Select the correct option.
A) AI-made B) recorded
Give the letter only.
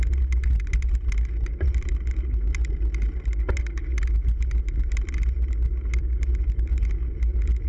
B